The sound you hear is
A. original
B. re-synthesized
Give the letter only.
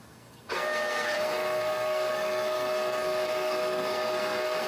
B